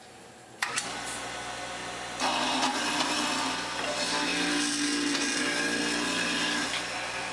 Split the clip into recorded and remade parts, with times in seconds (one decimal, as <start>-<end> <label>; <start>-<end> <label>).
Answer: 0.0-7.3 recorded